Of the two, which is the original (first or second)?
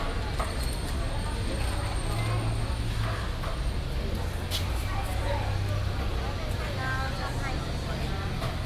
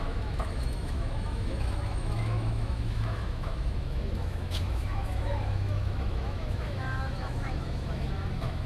first